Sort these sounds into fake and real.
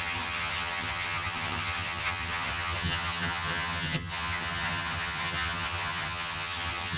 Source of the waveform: fake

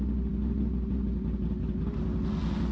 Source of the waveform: real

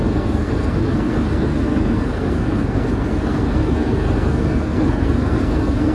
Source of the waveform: fake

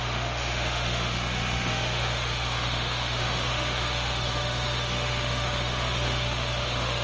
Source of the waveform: fake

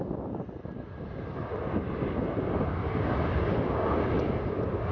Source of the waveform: real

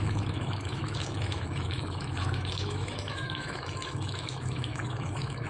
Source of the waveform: fake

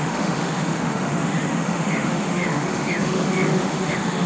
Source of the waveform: fake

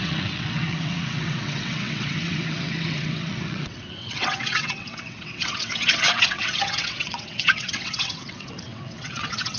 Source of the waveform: fake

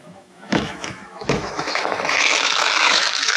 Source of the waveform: fake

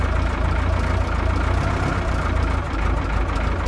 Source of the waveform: real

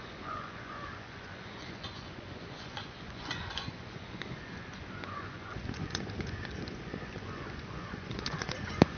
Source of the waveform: fake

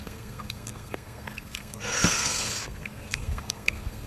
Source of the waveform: fake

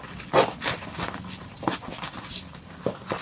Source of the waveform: real